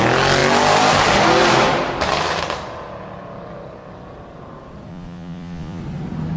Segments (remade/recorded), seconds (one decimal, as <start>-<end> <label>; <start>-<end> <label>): 0.0-4.9 recorded; 4.9-5.8 remade; 5.8-6.4 recorded